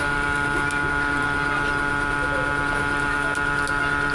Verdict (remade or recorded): recorded